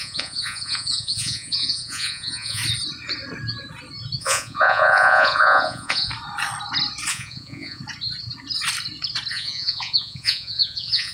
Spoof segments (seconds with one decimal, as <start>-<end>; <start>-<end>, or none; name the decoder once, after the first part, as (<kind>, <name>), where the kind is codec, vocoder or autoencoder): 0.0-2.6 (vocoder, Vocos); 4.2-6.1; 7.1-7.8; 9.3-11.1